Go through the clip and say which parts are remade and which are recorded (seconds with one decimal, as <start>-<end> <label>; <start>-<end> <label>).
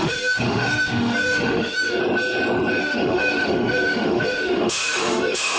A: 0.0-2.0 remade; 2.0-2.8 recorded; 2.8-5.6 remade